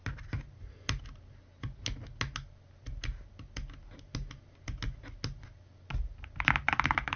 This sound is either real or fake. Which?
real